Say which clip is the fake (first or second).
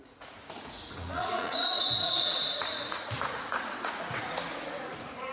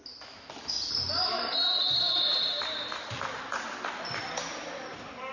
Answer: first